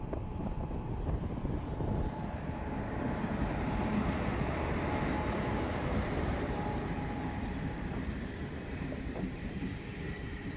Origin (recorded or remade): remade